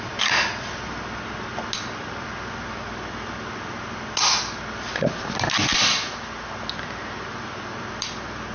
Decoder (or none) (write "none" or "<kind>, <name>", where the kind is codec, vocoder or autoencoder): none